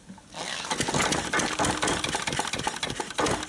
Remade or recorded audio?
recorded